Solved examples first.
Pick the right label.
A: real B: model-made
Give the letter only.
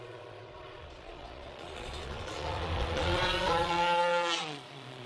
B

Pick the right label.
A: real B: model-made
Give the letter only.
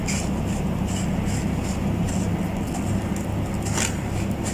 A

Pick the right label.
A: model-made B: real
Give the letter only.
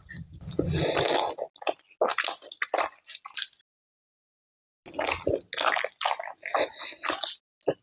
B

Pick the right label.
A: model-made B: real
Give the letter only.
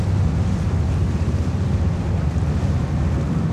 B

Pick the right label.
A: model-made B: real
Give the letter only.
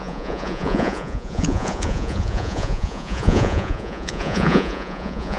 A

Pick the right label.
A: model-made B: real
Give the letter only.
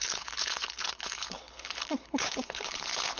A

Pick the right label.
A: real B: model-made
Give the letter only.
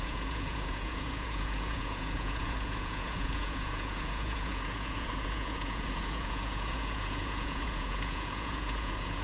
B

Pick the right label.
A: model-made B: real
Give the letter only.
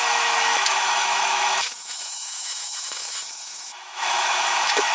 A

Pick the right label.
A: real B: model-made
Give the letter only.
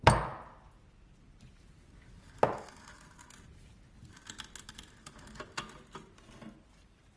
A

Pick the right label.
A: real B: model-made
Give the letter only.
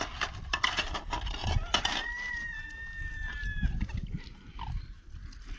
A